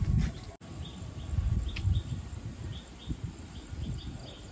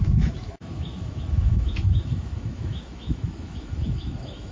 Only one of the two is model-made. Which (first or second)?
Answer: second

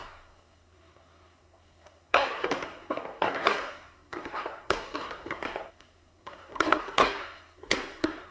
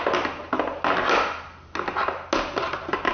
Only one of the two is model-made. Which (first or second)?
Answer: first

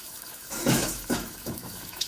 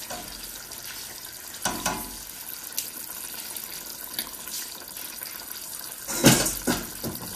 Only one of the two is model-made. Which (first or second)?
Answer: first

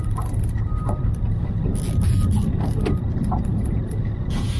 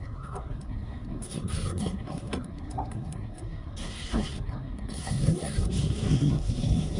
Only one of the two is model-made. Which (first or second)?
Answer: second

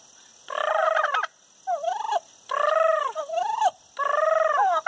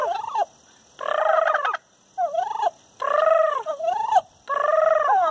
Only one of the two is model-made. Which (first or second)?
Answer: second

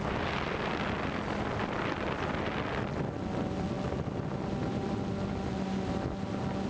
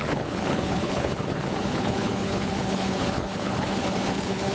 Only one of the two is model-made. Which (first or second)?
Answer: second